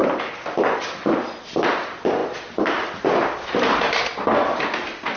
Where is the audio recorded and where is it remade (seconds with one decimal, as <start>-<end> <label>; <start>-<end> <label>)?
0.0-5.2 recorded